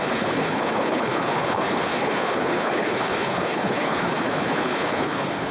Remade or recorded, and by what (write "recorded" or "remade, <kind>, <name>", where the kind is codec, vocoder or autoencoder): remade, codec, HILCodec